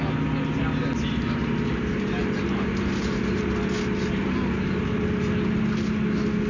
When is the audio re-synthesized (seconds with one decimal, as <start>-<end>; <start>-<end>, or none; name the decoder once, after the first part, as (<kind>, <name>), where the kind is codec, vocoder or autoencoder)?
none